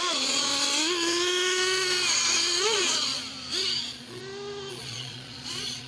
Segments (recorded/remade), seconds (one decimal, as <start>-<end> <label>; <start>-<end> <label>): 0.0-0.5 remade; 0.5-2.6 recorded; 2.6-3.1 remade; 3.1-3.8 recorded; 3.8-4.2 remade; 4.2-4.7 recorded; 4.7-5.9 remade

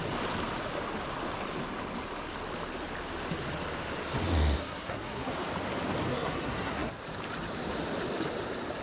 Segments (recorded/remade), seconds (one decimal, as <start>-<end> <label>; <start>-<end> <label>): 0.0-4.6 recorded; 4.6-5.3 remade; 5.3-6.1 recorded; 6.1-6.9 remade; 6.9-8.8 recorded

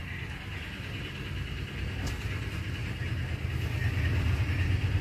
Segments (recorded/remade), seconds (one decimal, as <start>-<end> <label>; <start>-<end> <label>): 0.0-5.0 recorded

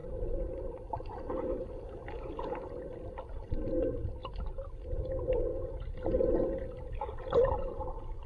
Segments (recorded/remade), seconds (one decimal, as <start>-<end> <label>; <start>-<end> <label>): 0.0-3.5 remade; 3.5-4.2 recorded; 4.2-5.2 remade; 5.2-8.3 recorded

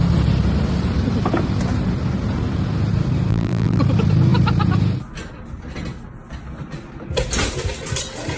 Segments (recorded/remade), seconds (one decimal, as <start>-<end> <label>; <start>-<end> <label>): 0.0-3.3 recorded; 3.3-3.8 remade; 3.8-8.4 recorded

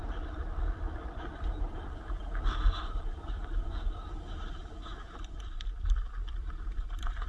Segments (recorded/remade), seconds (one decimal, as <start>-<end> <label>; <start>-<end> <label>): 0.0-3.4 remade; 3.4-4.9 recorded; 4.9-7.3 remade